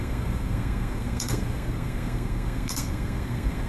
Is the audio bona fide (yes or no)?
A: no